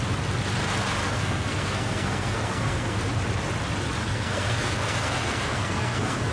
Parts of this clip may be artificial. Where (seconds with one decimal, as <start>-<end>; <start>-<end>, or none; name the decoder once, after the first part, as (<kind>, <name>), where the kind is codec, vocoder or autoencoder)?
1.0-3.0 (codec, SNAC); 4.0-6.3